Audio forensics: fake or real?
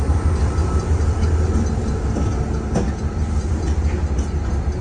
real